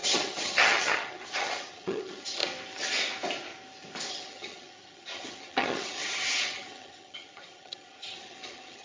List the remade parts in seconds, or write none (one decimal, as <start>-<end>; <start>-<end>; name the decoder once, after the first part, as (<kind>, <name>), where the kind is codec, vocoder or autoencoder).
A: 0.0-2.4 (vocoder, HiFi-GAN); 4.1-8.8